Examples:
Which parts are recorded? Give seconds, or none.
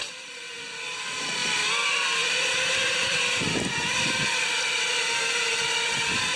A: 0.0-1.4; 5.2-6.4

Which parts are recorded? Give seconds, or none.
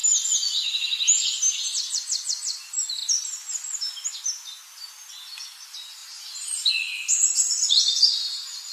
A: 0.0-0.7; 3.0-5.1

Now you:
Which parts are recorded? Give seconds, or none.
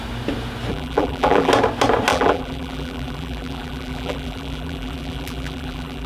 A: 0.0-0.7; 1.5-2.1